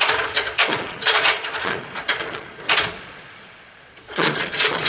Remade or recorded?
remade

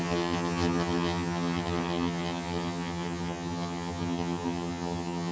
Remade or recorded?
remade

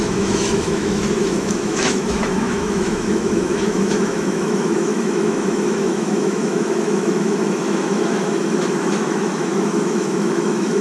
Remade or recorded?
remade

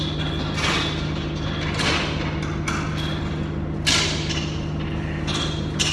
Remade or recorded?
recorded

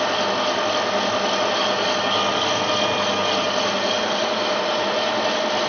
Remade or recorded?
recorded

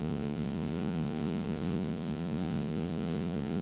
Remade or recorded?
remade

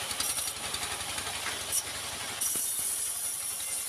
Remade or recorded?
recorded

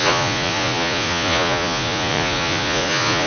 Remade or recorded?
remade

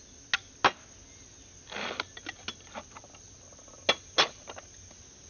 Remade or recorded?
recorded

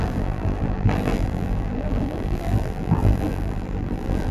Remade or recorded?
remade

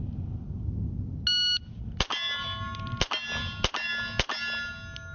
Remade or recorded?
recorded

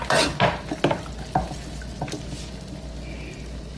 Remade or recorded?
recorded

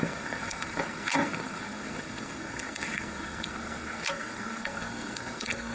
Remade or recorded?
remade